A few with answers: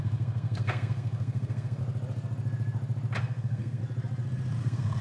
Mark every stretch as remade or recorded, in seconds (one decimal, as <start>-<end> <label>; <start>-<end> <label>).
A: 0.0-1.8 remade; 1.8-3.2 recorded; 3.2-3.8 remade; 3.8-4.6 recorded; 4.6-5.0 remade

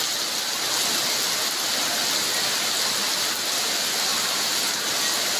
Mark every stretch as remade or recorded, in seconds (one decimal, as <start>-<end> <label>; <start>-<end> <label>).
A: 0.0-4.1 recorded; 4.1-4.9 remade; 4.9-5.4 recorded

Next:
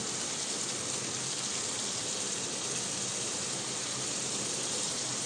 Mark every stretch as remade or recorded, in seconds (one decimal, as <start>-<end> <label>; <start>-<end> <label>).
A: 0.0-3.2 recorded; 3.2-5.3 remade